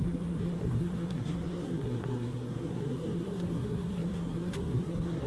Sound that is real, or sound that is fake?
fake